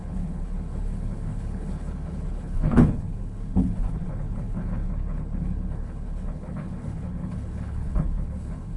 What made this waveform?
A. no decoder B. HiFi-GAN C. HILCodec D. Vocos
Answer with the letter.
C